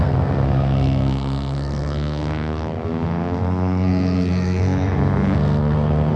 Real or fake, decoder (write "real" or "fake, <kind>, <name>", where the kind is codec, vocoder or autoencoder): fake, codec, SNAC